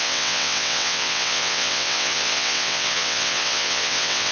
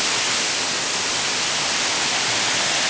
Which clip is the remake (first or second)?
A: first